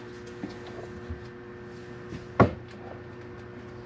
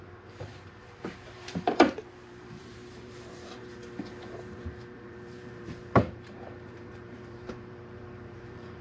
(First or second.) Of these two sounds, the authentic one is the first